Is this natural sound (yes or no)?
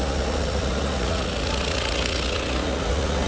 no